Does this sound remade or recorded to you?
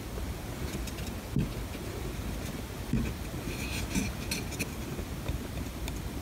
recorded